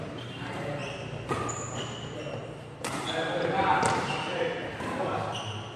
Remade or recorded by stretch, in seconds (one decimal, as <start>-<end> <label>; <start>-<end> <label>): 0.0-5.8 recorded